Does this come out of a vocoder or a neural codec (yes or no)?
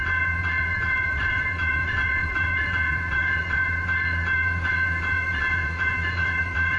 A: yes